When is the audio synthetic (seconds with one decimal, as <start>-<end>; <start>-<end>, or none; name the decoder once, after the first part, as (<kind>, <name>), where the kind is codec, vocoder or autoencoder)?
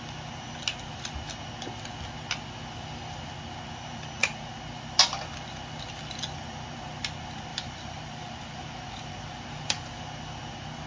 7.5-10.1 (vocoder, BigVGAN v2)